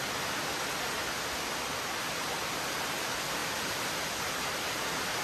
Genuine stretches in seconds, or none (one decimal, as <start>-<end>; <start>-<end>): 0.0-5.2